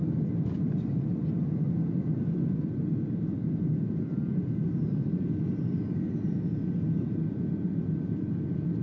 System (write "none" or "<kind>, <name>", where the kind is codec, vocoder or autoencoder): none